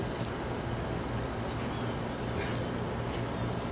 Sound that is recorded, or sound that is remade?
recorded